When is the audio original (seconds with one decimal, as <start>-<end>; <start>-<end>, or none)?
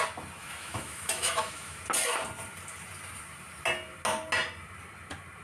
0.0-0.4; 1.8-5.4